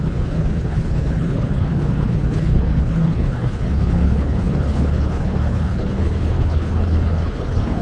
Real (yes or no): no